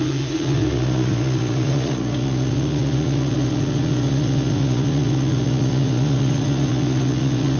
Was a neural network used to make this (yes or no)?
yes